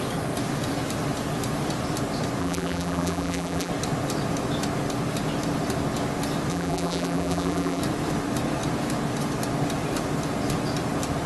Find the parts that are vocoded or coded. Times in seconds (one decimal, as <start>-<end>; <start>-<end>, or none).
2.4-3.7; 6.5-7.8